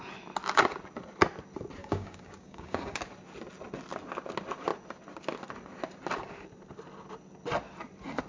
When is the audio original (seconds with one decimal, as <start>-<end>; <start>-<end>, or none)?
0.0-1.8; 3.0-8.3